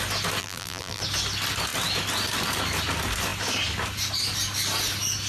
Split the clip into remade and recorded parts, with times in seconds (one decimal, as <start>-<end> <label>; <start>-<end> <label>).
0.0-0.4 recorded; 0.4-1.0 remade; 1.0-5.3 recorded